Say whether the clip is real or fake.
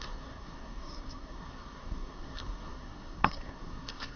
fake